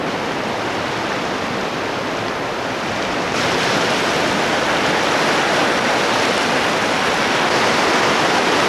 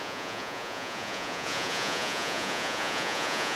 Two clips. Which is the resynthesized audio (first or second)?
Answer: second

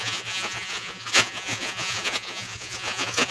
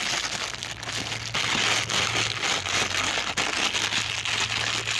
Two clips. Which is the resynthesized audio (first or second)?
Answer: first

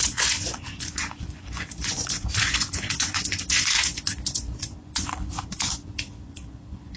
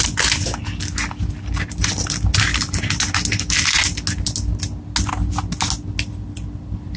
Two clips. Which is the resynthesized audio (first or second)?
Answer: first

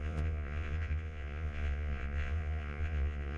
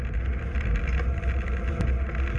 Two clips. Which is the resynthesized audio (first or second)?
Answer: first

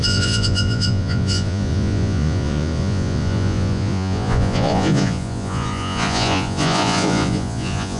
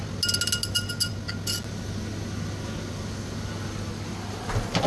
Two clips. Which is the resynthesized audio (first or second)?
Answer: first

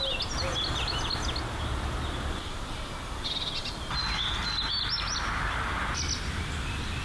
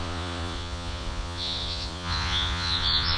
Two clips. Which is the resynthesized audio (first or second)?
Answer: second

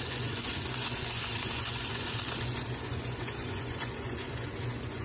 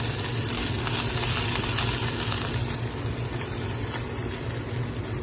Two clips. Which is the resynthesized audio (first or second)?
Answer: first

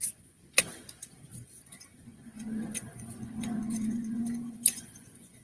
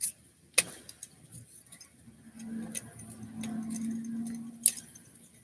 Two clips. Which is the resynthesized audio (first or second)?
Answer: first